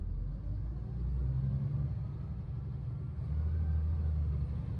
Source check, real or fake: real